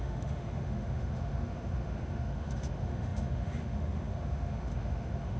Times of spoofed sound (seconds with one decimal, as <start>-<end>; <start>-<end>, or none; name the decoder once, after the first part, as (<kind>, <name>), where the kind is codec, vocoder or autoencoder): 0.0-5.4 (autoencoder, DAC-VAE)